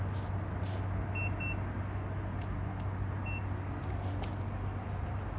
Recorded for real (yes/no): yes